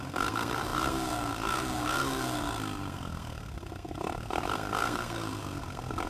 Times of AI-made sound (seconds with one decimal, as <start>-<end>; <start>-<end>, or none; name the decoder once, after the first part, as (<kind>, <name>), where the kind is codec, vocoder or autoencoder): 0.0-6.1 (codec, SNAC)

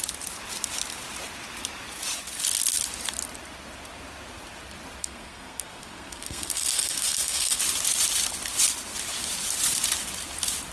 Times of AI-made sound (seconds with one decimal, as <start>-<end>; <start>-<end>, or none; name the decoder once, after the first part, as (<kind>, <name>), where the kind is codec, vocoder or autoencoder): 5.0-7.6 (codec, SNAC)

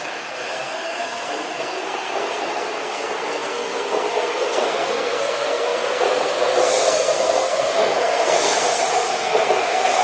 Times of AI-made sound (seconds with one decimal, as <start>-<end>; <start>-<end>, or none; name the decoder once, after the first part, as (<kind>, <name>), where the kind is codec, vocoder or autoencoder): 0.0-10.0 (codec, SNAC)

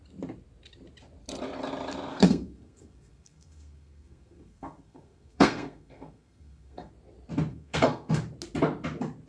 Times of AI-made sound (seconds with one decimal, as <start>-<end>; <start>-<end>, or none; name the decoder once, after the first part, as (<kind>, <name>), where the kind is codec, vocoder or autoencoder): 2.1-6.9 (codec, SNAC); 7.5-8.2

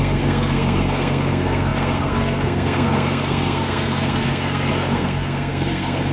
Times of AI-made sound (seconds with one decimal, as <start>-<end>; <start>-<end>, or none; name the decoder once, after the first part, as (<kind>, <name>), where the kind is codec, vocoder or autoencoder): 0.0-6.1 (codec, SNAC)

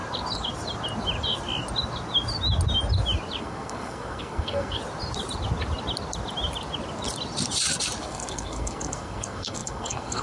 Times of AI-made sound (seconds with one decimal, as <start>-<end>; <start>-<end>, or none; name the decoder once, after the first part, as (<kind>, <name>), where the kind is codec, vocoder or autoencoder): 3.4-4.8 (codec, SNAC); 8.0-10.2